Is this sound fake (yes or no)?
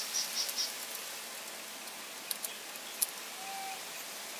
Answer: no